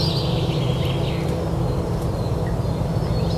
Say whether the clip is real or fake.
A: real